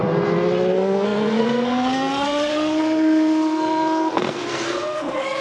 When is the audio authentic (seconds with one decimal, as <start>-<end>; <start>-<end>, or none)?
0.0-0.7